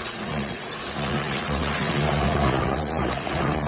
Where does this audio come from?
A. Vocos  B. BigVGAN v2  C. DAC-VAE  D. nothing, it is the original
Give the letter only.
A